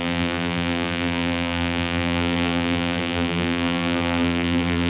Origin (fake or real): fake